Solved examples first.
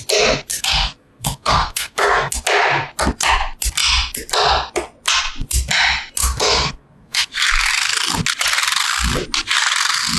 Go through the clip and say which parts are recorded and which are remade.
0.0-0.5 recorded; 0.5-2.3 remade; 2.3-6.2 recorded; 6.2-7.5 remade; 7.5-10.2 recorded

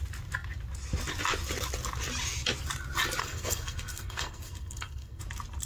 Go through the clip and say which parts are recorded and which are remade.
0.0-3.2 recorded; 3.2-5.2 remade; 5.2-5.7 recorded

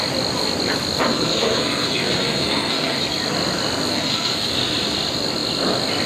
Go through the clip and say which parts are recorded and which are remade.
0.0-1.1 recorded; 1.1-3.0 remade; 3.0-3.9 recorded; 3.9-4.5 remade; 4.5-6.1 recorded

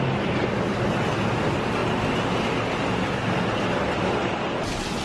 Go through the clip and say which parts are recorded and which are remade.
0.0-5.0 recorded

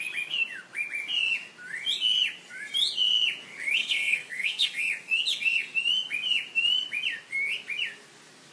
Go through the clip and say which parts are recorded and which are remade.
0.0-3.8 recorded; 3.8-4.8 remade; 4.8-8.5 recorded

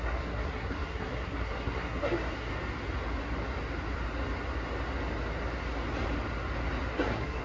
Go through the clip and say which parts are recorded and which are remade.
0.0-2.5 remade; 2.5-6.9 recorded; 6.9-7.4 remade